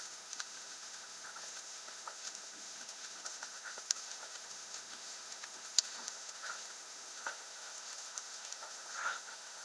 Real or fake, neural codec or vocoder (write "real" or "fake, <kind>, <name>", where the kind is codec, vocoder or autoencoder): fake, autoencoder, DAC-VAE